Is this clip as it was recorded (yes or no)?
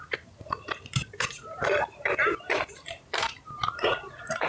no